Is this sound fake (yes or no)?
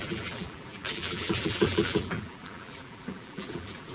yes